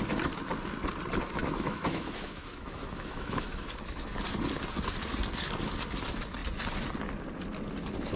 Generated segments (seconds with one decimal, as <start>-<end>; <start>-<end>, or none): 1.4-4.1